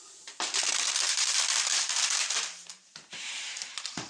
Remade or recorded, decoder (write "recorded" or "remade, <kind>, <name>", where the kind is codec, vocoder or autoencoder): remade, vocoder, BigVGAN v2